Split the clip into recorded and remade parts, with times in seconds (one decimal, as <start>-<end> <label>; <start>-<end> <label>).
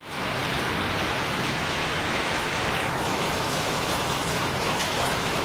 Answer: 0.0-0.4 remade; 0.4-1.2 recorded; 1.2-5.4 remade